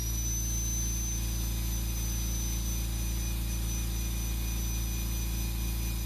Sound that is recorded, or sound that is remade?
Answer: recorded